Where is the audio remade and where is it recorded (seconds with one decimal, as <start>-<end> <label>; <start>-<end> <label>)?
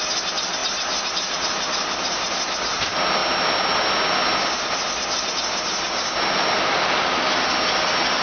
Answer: 0.0-8.2 recorded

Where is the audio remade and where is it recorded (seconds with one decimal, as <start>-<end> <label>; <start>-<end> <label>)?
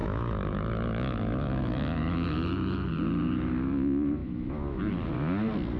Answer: 0.0-2.9 remade; 2.9-4.2 recorded; 4.2-4.8 remade; 4.8-5.8 recorded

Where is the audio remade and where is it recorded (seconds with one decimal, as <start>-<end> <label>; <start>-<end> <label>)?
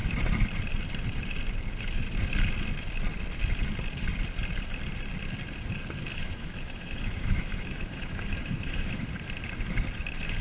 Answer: 0.0-6.1 recorded; 6.1-9.1 remade; 9.1-10.4 recorded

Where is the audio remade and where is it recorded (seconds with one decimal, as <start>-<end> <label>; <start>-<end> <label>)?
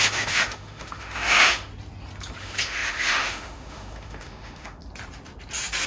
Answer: 0.0-1.7 remade; 1.7-2.4 recorded; 2.4-4.8 remade; 4.8-5.9 recorded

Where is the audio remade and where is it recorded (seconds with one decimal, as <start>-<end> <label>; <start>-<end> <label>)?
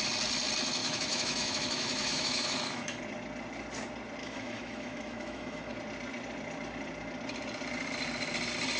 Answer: 0.0-0.8 recorded; 0.8-3.0 remade; 3.0-4.2 recorded; 4.2-5.7 remade; 5.7-8.8 recorded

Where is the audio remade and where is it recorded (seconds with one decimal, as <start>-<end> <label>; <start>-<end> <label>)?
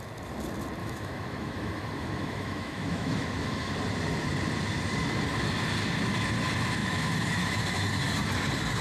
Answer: 0.0-0.8 recorded; 0.8-3.7 remade; 3.7-6.8 recorded; 6.8-7.9 remade; 7.9-8.8 recorded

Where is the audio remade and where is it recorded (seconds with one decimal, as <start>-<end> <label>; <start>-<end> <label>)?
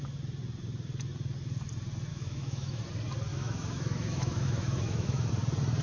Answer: 0.0-2.1 recorded; 2.1-2.8 remade; 2.8-3.3 recorded; 3.3-5.3 remade; 5.3-5.8 recorded